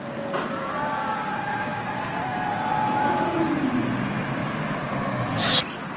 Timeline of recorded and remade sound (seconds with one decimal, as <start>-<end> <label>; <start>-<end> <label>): 0.0-6.0 recorded